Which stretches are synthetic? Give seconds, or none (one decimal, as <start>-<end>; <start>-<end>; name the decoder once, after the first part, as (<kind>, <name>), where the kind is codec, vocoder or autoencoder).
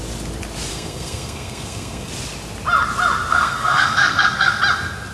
0.7-2.1 (codec, SNAC); 3.3-4.6